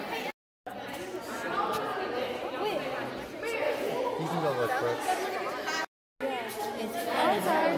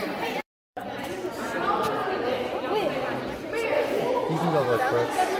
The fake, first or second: second